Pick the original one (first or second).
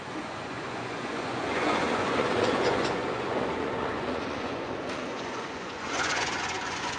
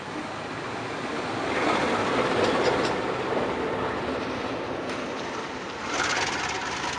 second